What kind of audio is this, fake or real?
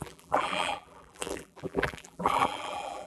fake